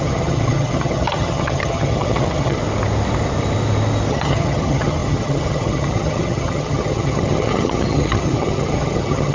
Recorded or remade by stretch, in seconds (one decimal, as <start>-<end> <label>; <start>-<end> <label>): 0.0-2.6 remade; 2.6-4.1 recorded; 4.1-9.3 remade